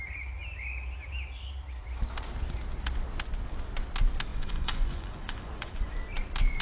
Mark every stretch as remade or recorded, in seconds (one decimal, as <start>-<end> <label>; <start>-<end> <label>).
0.0-4.3 recorded; 4.3-6.0 remade; 6.0-6.6 recorded